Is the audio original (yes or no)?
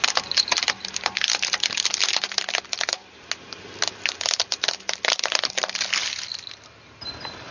yes